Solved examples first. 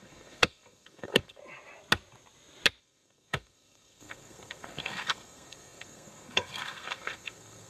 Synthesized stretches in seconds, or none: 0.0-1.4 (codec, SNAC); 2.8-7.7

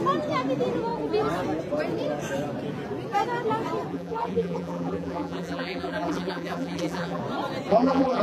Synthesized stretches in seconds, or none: 3.9-7.2 (vocoder, BigVGAN v2); 7.7-8.2

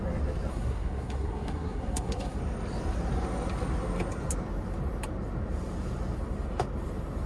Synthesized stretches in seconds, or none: 0.5-2.4 (codec, SNAC)

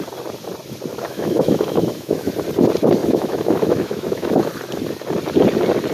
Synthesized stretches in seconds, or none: 0.9-2.3 (autoencoder, DAC-VAE); 3.0-4.5

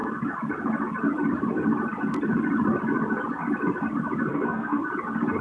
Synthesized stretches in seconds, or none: 4.3-4.8 (codec, SNAC)

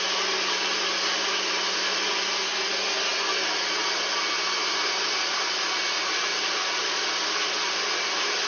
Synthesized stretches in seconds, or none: 6.3-6.9 (vocoder, BigVGAN v2)